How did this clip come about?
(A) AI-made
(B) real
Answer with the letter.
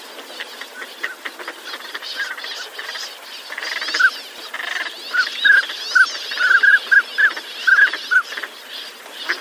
B